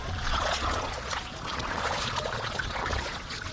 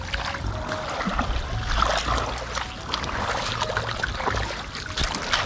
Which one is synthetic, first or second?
first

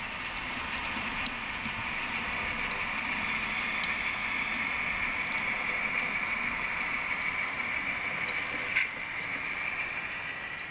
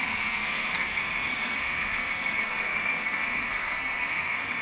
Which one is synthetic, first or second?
second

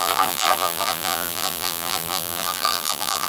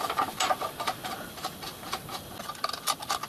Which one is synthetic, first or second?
first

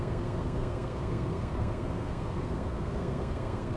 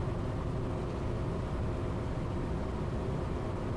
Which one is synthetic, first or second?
first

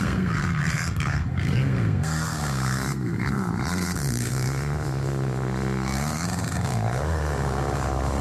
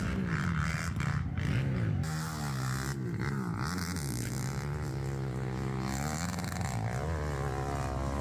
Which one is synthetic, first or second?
first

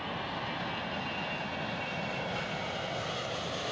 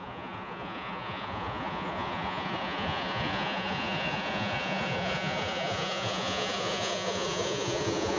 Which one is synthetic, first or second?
second